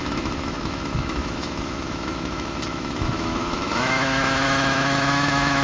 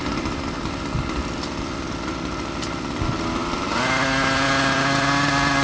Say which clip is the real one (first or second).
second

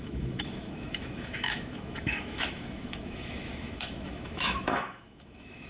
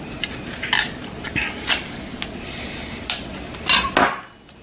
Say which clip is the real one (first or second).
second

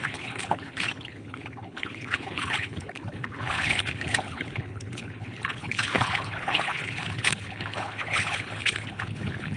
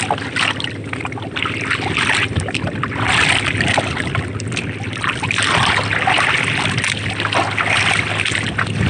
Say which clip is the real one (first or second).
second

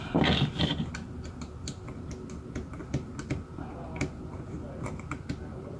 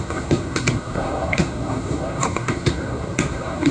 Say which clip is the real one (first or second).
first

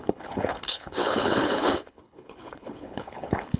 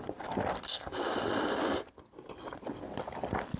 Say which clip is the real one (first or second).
second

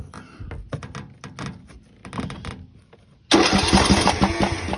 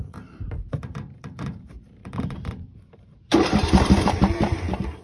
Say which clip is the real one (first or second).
first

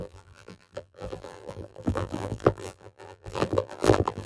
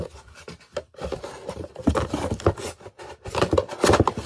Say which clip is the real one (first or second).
second